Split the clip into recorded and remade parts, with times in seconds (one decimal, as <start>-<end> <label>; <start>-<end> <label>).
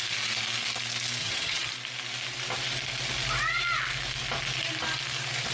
0.0-1.2 recorded; 1.2-1.7 remade; 1.7-5.5 recorded